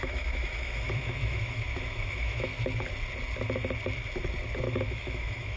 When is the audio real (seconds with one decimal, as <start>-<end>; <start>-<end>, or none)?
2.5-4.6